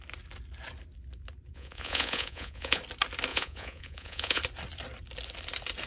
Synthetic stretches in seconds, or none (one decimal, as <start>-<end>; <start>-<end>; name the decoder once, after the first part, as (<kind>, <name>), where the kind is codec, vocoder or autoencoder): 1.5-2.8 (vocoder, Vocos); 3.3-4.4